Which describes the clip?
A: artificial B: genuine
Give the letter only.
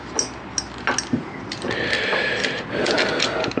B